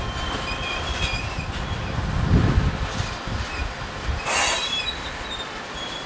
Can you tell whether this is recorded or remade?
recorded